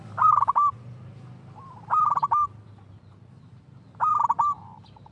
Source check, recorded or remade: recorded